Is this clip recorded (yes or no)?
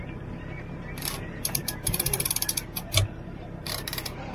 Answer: no